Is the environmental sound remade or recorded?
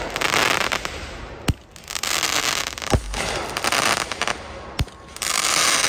recorded